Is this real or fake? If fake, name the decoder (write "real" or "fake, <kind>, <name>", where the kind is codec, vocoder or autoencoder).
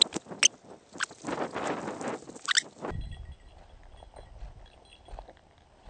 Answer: real